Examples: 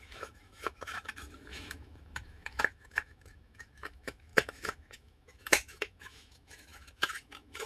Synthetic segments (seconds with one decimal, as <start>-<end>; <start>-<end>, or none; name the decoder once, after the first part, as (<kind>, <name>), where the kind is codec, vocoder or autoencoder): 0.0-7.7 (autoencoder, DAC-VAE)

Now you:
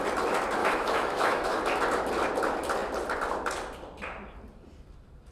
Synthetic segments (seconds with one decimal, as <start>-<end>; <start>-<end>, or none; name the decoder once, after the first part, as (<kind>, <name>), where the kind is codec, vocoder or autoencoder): 0.6-1.6 (autoencoder, DAC-VAE)

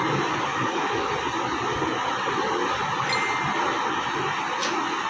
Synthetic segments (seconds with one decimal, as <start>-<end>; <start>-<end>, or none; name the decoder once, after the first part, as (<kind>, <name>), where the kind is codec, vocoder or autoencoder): 0.5-1.1 (autoencoder, DAC-VAE)

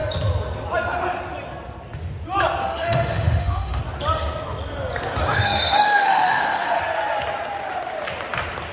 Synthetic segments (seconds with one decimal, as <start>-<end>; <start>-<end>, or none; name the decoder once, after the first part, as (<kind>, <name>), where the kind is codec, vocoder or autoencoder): 2.6-3.8 (autoencoder, DAC-VAE); 5.3-6.8